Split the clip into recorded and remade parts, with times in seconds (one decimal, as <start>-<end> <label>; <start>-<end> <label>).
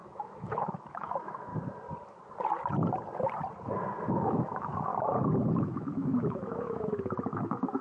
0.0-1.5 remade; 1.5-4.1 recorded; 4.1-4.9 remade; 4.9-5.6 recorded; 5.6-7.8 remade